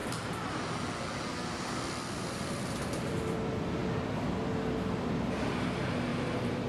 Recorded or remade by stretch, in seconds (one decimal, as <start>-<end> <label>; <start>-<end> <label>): 0.0-1.3 recorded; 1.3-3.8 remade; 3.8-5.3 recorded; 5.3-6.1 remade; 6.1-6.7 recorded